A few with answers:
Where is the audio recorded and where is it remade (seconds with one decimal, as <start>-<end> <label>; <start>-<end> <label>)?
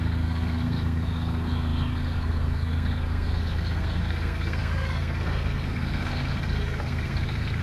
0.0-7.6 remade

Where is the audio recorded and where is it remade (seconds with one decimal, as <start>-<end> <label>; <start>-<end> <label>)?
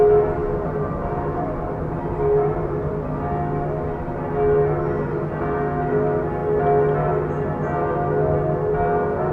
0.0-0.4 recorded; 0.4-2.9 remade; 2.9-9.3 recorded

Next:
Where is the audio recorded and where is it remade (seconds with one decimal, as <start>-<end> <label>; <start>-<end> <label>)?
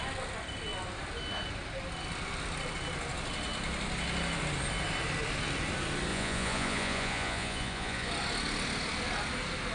0.0-6.1 recorded; 6.1-8.1 remade; 8.1-9.7 recorded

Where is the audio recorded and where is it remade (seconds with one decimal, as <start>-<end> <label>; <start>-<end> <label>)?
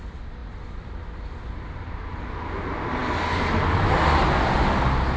0.0-5.2 recorded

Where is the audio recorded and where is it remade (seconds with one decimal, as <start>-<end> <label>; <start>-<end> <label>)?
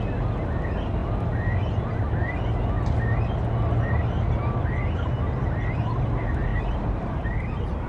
0.0-6.5 recorded; 6.5-7.9 remade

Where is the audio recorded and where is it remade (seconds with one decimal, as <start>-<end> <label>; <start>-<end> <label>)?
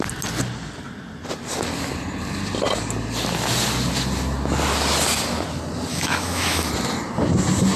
0.0-5.9 recorded; 5.9-6.7 remade; 6.7-7.8 recorded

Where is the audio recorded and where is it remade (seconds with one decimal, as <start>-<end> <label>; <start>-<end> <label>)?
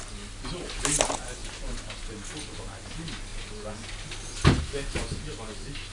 0.0-5.9 recorded